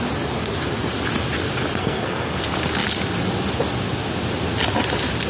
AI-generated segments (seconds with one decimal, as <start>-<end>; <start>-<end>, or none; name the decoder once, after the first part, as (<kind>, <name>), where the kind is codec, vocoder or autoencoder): 1.8-2.4 (codec, SNAC)